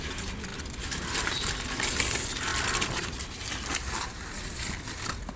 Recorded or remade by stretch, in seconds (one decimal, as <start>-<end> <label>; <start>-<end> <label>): 0.0-0.5 recorded; 0.5-1.5 remade; 1.5-2.5 recorded; 2.5-3.5 remade; 3.5-5.4 recorded